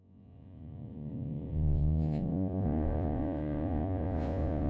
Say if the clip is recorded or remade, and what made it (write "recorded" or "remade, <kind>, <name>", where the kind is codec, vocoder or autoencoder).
remade, vocoder, Vocos